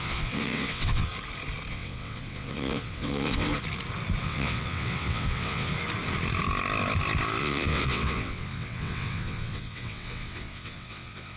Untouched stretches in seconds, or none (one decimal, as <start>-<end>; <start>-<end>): 1.1-1.7; 3.5-4.2; 5.7-7.4